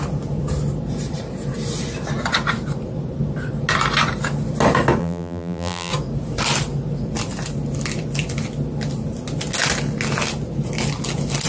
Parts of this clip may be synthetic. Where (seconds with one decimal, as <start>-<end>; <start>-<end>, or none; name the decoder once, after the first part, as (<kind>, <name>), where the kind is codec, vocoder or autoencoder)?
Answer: 5.0-5.9 (vocoder, BigVGAN v2)

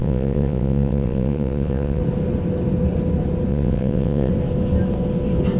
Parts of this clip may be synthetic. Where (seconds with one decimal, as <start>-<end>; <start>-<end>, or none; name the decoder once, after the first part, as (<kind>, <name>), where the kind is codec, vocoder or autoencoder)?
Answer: 0.0-2.0 (vocoder, WaveNeXt); 3.5-4.3

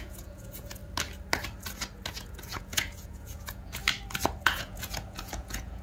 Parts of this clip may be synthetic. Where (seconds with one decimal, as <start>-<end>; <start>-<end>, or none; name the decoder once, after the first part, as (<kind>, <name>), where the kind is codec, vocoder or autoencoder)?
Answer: 0.0-0.8 (vocoder, Vocos); 2.1-3.8; 4.4-5.8

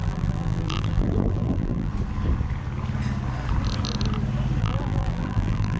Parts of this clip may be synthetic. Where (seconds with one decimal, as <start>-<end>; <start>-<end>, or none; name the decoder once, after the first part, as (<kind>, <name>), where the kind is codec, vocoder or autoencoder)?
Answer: 0.0-1.9 (vocoder, BigVGAN v2); 4.6-5.8

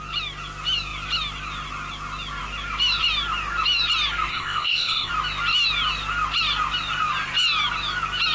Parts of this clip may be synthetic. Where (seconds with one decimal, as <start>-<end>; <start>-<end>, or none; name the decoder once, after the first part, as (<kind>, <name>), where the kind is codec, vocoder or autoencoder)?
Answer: 4.3-5.1 (codec, ZipCodec)

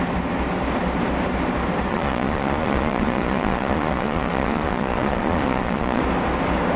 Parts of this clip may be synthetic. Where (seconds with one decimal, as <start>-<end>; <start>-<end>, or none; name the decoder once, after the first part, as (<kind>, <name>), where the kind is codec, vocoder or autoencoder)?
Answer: 1.9-6.0 (vocoder, Vocos)

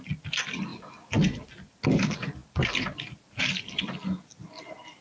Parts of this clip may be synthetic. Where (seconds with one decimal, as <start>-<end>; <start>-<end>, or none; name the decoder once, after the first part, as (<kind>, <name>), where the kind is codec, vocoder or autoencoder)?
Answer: none